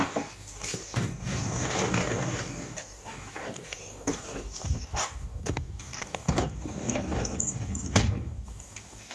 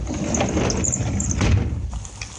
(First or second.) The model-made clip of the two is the first